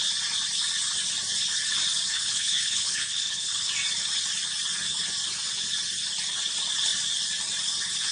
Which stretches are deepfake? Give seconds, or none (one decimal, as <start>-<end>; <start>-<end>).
2.1-3.7

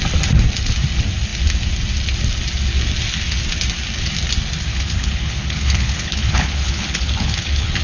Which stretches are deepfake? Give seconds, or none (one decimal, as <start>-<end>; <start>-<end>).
4.7-7.8

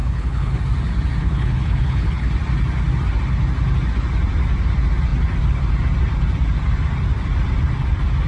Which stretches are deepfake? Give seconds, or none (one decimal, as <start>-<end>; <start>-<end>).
0.0-0.6; 1.2-2.3

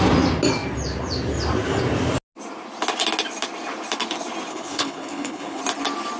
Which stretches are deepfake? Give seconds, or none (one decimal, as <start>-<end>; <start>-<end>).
4.5-5.6

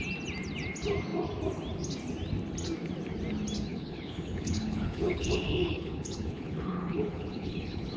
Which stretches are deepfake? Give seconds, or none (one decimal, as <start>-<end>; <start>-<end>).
3.7-8.0

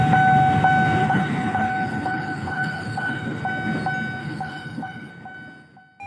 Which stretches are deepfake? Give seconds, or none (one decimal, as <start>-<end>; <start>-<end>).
1.0-3.4; 4.2-5.1

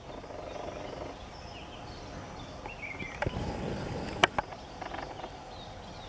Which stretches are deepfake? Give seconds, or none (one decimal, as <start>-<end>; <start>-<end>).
none

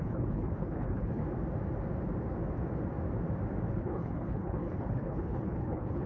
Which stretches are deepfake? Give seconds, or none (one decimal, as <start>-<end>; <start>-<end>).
0.0-1.2; 3.7-6.1